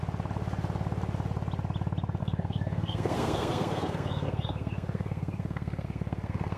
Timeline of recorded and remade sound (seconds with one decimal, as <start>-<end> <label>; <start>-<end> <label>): 0.0-2.2 recorded; 2.2-6.6 remade

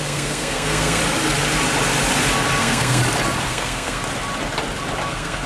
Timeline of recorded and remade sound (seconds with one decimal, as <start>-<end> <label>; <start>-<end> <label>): 0.0-1.0 remade; 1.0-2.6 recorded; 2.6-3.0 remade; 3.0-3.5 recorded; 3.5-4.0 remade; 4.0-5.1 recorded; 5.1-5.5 remade

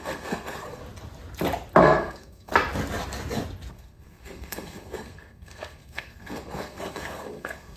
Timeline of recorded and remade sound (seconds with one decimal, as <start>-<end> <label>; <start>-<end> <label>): 0.0-0.8 remade; 0.8-1.8 recorded; 1.8-2.5 remade; 2.5-3.7 recorded; 3.7-7.8 remade

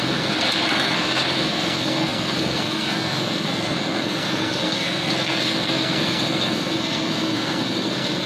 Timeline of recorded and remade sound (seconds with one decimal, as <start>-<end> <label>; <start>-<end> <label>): 0.0-8.3 remade

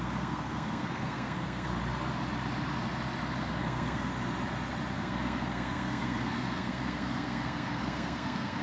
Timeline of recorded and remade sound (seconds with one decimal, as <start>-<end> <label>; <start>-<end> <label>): 0.0-1.7 remade; 1.7-3.4 recorded; 3.4-4.1 remade; 4.1-4.9 recorded; 4.9-8.6 remade